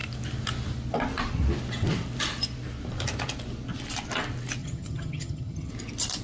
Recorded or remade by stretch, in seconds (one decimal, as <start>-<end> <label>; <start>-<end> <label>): 0.0-4.6 recorded; 4.6-5.7 remade; 5.7-6.2 recorded